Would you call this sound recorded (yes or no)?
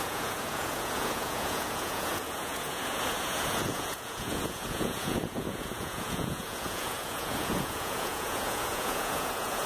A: no